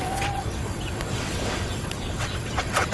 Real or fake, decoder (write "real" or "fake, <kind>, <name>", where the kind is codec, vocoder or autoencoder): fake, vocoder, WaveNeXt